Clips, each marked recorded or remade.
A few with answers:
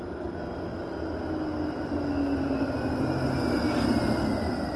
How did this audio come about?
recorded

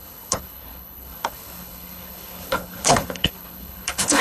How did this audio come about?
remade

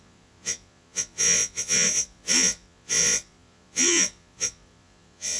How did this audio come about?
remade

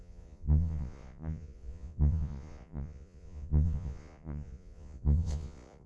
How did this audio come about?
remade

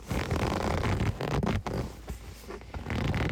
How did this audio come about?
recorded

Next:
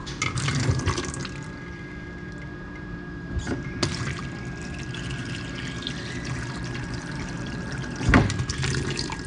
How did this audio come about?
remade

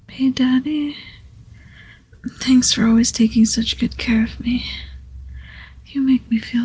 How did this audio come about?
recorded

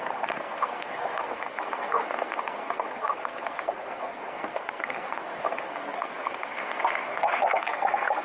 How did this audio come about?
remade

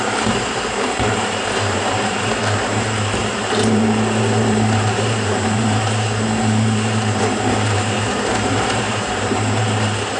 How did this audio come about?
remade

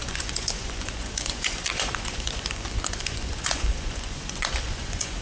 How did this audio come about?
remade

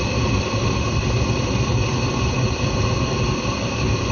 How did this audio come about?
recorded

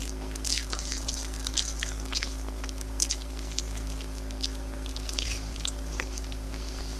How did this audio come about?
remade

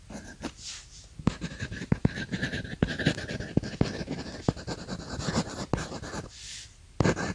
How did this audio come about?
recorded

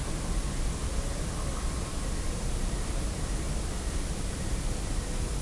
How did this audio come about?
recorded